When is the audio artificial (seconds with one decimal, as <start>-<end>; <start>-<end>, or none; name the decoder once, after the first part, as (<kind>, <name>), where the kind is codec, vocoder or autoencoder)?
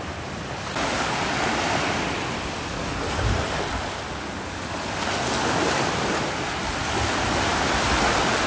none